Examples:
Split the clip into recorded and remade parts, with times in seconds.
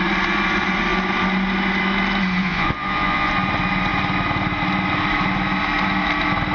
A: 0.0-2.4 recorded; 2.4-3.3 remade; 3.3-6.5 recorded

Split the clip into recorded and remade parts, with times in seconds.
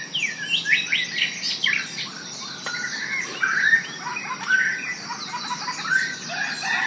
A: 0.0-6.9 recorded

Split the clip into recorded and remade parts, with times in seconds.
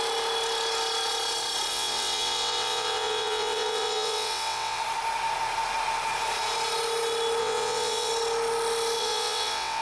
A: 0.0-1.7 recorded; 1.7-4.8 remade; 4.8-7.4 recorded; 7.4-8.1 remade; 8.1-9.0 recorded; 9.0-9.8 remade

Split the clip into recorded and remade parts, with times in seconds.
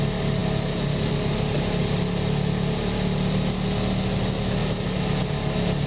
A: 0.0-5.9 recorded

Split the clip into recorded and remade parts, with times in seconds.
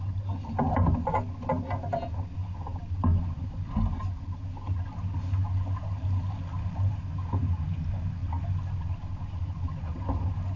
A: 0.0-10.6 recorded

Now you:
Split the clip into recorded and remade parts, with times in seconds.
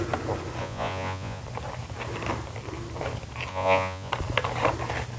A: 0.0-0.6 recorded; 0.6-1.4 remade; 1.4-3.5 recorded; 3.5-4.1 remade; 4.1-5.2 recorded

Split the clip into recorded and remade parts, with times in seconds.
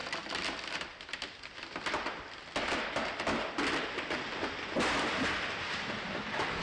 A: 0.0-3.5 remade; 3.5-6.6 recorded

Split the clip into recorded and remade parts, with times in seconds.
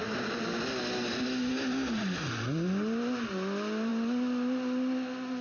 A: 0.0-5.4 recorded